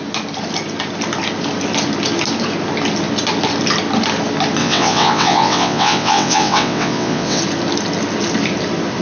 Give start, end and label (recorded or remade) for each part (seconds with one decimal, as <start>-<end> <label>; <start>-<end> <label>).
0.0-4.6 recorded; 4.6-7.4 remade; 7.4-9.0 recorded